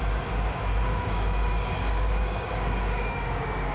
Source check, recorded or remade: remade